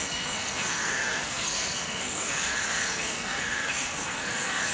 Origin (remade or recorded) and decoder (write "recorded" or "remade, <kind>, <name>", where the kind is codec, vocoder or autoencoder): remade, codec, SNAC